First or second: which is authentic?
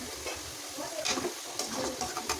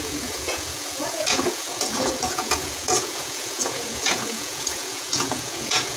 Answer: first